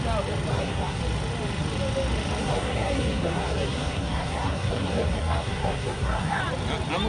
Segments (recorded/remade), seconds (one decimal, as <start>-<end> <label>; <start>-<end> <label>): 0.0-0.5 recorded; 0.5-1.0 remade; 1.0-2.4 recorded; 2.4-6.4 remade; 6.4-7.1 recorded